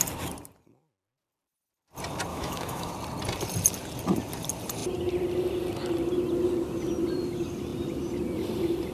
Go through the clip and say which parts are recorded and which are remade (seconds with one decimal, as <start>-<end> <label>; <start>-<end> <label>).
0.0-2.3 recorded; 2.3-2.9 remade; 2.9-8.9 recorded